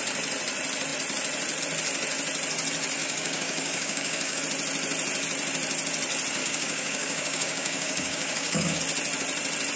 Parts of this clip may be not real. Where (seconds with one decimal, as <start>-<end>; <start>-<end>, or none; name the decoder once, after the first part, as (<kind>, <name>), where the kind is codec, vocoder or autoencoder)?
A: 3.0-4.4 (codec, DAC); 6.4-8.8